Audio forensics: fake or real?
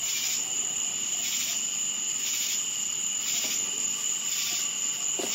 real